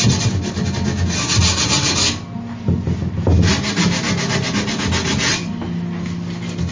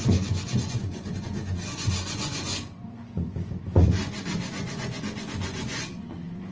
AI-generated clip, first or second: second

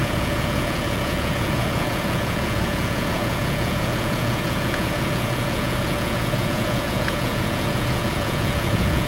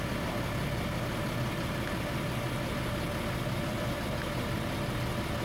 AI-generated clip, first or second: first